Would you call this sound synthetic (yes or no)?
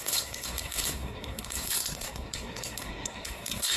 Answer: yes